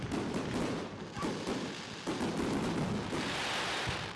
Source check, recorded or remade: recorded